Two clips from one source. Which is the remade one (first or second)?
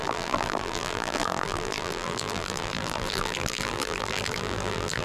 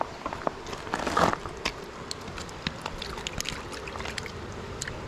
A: first